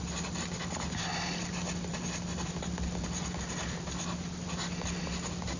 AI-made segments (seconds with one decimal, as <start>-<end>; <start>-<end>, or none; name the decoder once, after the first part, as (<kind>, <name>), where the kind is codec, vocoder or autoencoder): none